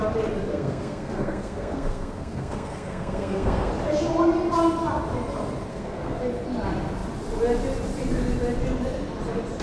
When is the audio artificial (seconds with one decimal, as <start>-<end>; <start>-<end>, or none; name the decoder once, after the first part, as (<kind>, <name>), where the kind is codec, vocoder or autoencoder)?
0.5-3.7 (codec, SNAC); 5.7-6.2